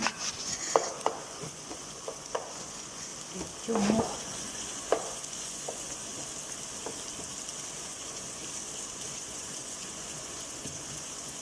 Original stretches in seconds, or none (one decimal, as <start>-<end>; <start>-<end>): 3.1-4.0; 6.1-7.8; 8.4-8.9